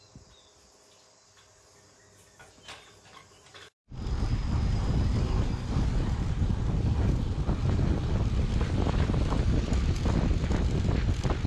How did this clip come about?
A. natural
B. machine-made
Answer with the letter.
A